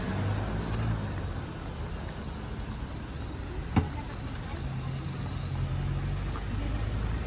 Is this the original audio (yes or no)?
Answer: yes